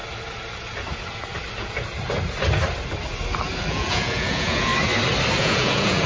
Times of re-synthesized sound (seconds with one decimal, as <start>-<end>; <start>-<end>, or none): 3.7-4.7; 5.4-6.1